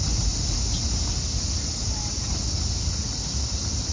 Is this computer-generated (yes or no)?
no